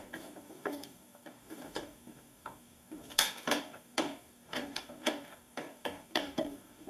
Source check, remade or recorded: remade